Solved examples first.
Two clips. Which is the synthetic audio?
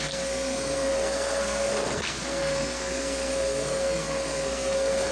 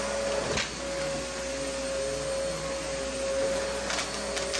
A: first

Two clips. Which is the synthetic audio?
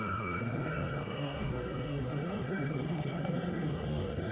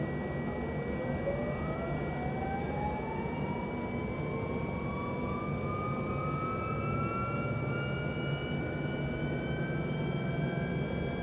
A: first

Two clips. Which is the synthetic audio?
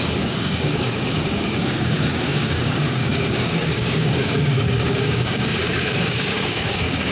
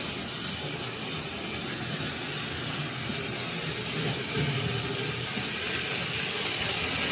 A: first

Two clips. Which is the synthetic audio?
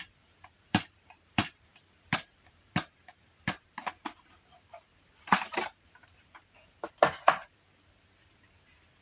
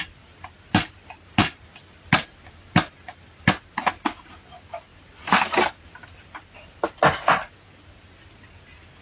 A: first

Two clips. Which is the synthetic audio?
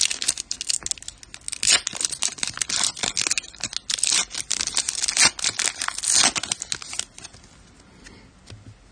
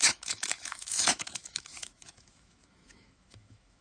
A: second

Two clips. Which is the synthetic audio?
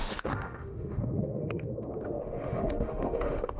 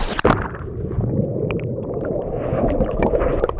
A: first